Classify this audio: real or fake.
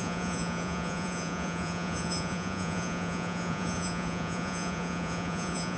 fake